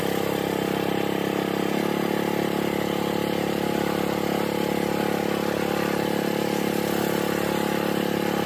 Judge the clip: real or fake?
real